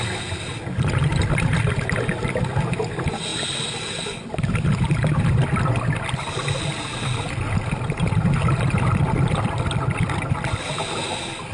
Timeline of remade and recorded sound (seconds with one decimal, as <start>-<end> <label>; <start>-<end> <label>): 0.0-11.5 recorded